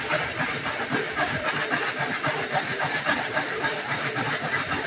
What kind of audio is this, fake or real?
real